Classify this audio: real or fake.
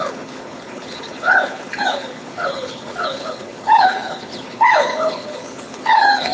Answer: fake